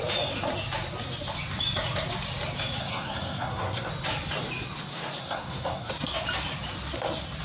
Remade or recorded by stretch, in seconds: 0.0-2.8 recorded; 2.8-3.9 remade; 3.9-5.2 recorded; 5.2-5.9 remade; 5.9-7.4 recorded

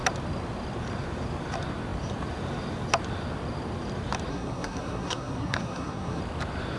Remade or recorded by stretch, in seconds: 0.0-4.3 recorded; 4.3-6.2 remade; 6.2-6.8 recorded